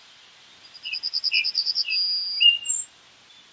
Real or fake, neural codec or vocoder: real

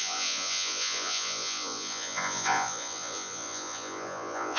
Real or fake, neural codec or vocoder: fake, vocoder, Vocos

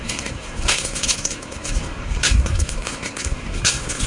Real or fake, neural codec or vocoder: fake, codec, SNAC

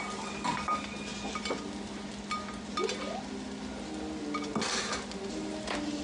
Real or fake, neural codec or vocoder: real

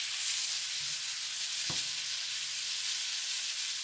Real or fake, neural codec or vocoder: real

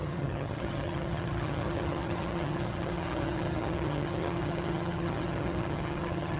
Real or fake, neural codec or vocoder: fake, vocoder, HiFi-GAN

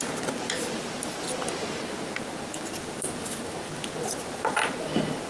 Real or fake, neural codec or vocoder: real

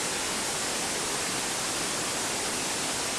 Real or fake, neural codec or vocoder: real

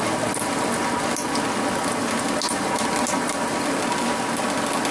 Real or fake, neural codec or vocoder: real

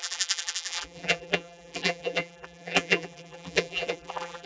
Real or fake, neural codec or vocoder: fake, vocoder, BigVGAN v2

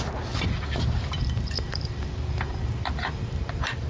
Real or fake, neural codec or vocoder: fake, vocoder, BigVGAN v2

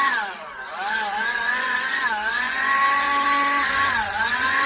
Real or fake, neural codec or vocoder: fake, vocoder, Vocos